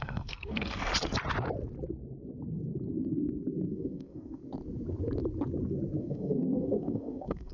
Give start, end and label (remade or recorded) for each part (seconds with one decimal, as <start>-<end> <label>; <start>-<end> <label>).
0.0-0.9 remade; 0.9-3.7 recorded; 3.7-4.4 remade; 4.4-6.0 recorded; 6.0-7.5 remade